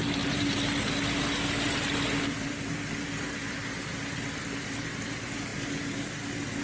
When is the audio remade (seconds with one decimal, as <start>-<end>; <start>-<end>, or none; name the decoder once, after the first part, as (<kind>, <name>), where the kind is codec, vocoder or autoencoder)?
none